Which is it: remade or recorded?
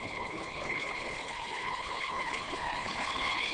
remade